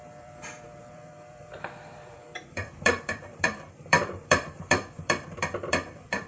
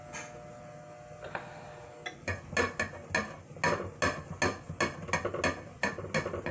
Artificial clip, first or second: first